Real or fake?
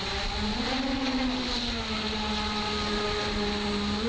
real